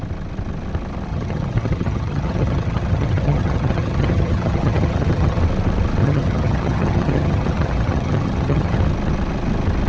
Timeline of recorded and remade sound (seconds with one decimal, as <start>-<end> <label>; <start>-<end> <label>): 0.0-1.1 recorded; 1.1-5.4 remade; 5.4-6.0 recorded; 6.0-8.8 remade; 8.8-9.9 recorded